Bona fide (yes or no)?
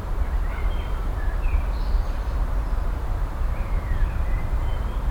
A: no